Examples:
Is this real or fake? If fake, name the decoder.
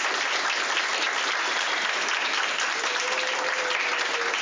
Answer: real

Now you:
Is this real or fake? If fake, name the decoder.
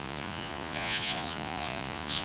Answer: fake, vocoder, Vocos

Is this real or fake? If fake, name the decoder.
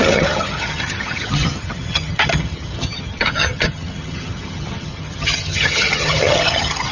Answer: fake, vocoder, HiFi-GAN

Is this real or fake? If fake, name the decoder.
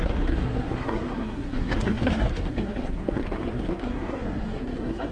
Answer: fake, codec, SNAC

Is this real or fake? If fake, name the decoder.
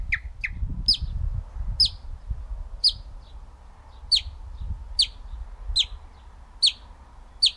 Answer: real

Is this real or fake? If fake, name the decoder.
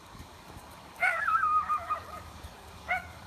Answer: fake, codec, DAC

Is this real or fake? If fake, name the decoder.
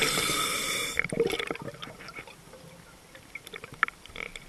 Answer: real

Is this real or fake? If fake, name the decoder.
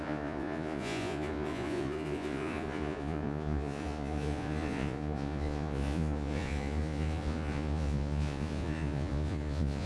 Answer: fake, vocoder, Vocos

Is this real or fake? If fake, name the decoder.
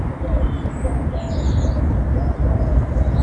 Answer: real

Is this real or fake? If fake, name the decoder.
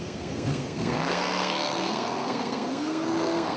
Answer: fake, codec, SNAC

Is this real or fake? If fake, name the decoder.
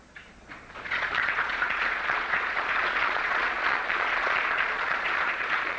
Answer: fake, vocoder, Vocos